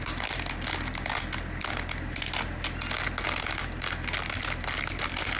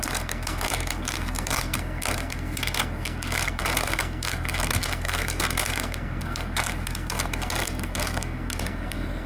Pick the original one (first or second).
first